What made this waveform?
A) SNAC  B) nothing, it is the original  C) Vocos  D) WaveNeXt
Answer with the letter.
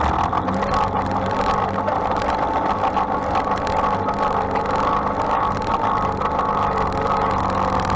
B